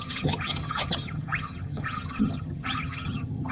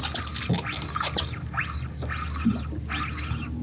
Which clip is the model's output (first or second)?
first